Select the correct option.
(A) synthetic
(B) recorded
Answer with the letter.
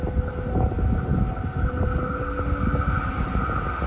B